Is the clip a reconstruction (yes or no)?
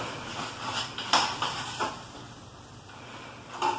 no